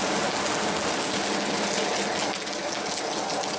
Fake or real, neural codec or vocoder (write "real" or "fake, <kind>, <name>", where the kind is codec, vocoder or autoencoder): real